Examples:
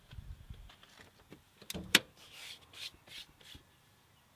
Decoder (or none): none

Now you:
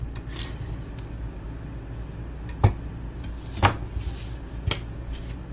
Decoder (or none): none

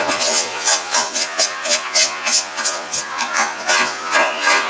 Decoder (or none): vocoder, Vocos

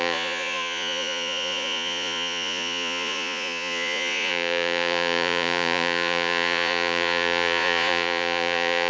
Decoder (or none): vocoder, Vocos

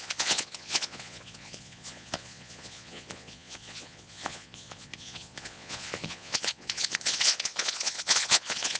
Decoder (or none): vocoder, Vocos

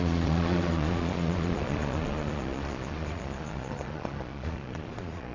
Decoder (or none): vocoder, Vocos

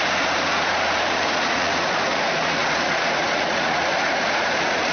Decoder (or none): vocoder, Vocos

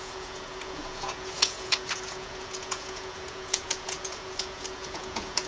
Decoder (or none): vocoder, Vocos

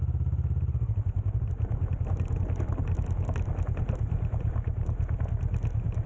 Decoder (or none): none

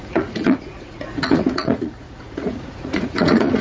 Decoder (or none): vocoder, Vocos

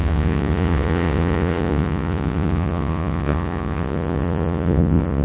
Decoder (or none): vocoder, Vocos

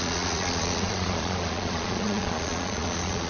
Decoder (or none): vocoder, Vocos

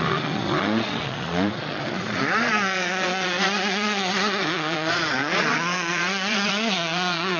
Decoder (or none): vocoder, Vocos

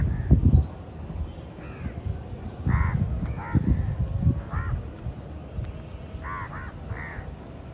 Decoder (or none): none